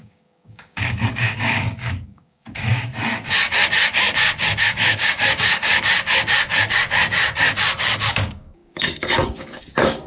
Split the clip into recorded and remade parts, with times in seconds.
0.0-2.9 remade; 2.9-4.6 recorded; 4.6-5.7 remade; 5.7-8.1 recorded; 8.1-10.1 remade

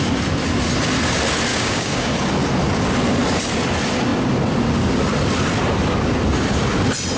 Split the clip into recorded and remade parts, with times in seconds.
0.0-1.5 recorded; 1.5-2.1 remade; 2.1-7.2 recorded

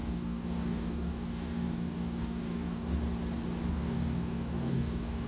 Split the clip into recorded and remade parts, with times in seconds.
0.0-2.9 remade; 2.9-3.7 recorded; 3.7-5.3 remade